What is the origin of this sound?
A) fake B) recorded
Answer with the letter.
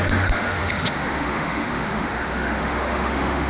A